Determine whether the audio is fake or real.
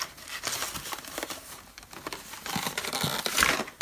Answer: real